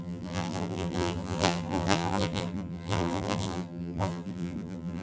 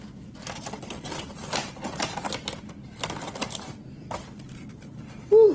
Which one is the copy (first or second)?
first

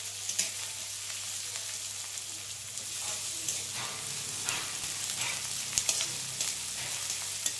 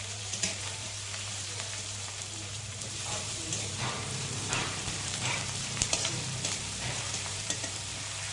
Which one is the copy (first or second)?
second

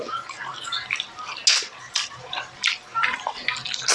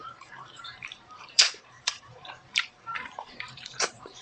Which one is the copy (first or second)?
second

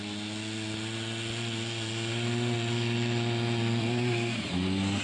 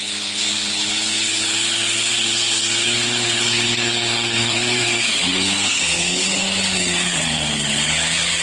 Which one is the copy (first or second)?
second